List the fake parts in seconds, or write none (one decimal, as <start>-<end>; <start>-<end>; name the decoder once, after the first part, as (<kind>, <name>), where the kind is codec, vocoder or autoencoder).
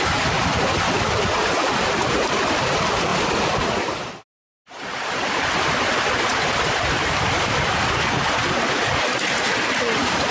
0.0-10.3 (vocoder, BigVGAN v2)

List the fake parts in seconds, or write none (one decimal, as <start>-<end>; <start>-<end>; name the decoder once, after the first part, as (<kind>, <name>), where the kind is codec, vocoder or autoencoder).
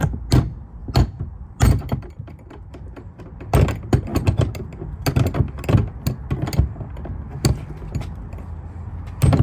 0.8-3.2 (vocoder, BigVGAN v2)